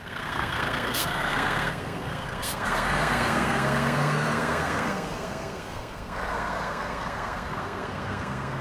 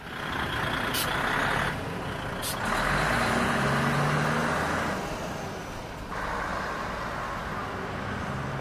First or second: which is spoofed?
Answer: first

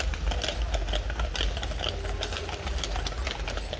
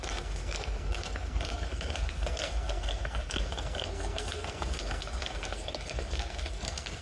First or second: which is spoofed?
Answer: second